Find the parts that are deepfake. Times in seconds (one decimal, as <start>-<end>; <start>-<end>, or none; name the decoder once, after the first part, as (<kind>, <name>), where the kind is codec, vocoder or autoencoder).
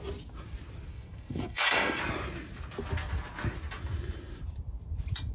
0.9-2.0 (codec, SNAC)